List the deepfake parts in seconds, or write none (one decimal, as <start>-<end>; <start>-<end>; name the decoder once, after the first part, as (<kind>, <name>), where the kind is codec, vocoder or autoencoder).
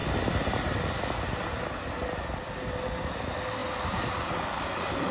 none